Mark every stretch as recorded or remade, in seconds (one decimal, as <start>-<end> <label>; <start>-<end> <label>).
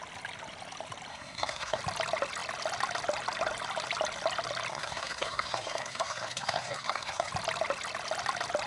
0.0-1.1 recorded; 1.1-1.8 remade; 1.8-4.7 recorded; 4.7-7.3 remade; 7.3-8.7 recorded